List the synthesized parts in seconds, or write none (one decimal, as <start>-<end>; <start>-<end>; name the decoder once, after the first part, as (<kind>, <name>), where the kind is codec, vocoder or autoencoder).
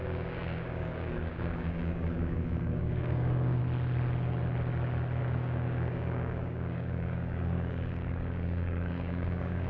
0.0-3.6 (codec, DAC); 5.2-9.7